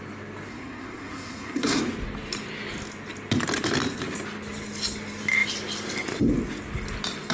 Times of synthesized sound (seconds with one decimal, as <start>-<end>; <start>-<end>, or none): 0.5-1.8